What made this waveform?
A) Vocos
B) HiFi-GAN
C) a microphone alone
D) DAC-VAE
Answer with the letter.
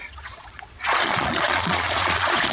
A